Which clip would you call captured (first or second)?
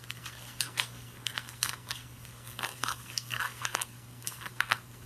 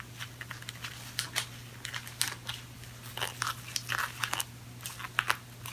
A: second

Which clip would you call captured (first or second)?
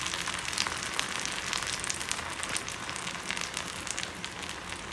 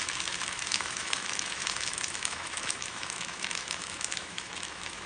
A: first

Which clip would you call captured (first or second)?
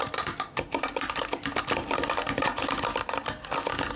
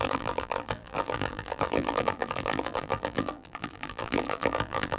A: first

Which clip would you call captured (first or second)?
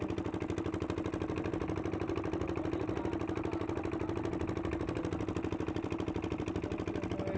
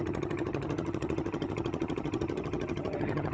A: first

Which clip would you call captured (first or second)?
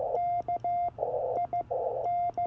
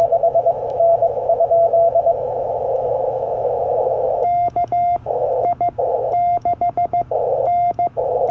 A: first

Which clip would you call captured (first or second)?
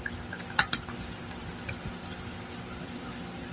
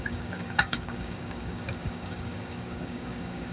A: first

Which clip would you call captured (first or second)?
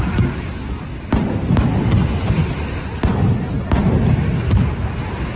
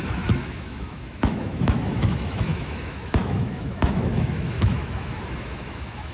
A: first